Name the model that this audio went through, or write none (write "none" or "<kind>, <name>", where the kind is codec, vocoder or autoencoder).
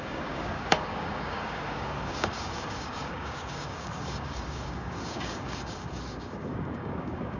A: codec, DAC